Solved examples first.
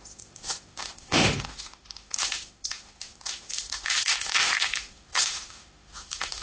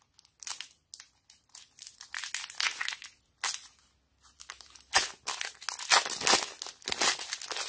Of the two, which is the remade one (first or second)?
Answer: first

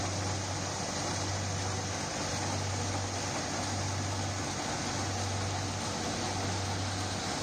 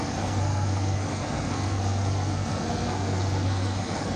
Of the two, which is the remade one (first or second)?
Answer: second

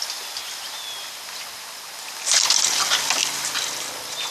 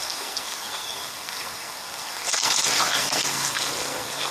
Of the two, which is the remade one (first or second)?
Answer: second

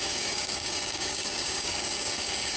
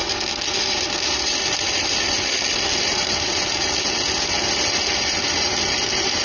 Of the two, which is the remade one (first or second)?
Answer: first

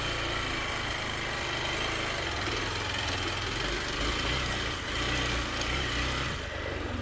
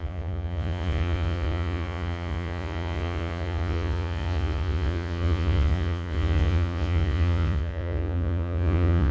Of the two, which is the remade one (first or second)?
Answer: second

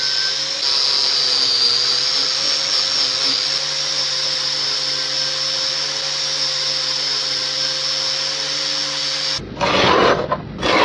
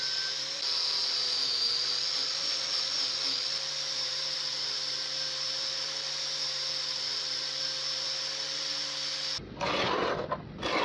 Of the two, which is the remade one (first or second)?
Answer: second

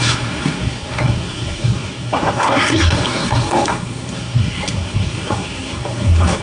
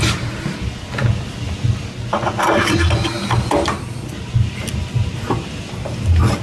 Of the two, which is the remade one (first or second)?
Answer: first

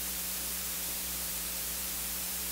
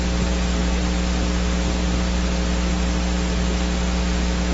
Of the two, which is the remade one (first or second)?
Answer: first